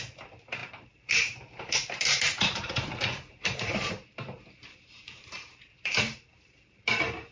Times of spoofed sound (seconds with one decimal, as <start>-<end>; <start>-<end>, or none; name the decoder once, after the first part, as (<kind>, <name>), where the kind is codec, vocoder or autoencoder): 0.0-7.3 (vocoder, BigVGAN v2)